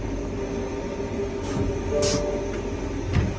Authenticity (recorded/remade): recorded